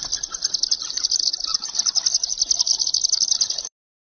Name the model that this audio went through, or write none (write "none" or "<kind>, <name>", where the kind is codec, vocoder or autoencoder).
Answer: none